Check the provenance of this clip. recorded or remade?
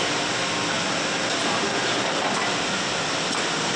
recorded